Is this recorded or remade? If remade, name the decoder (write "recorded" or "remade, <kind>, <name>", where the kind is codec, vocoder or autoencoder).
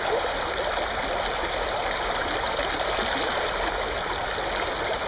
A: recorded